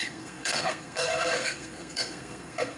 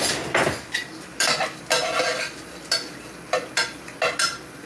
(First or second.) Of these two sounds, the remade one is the first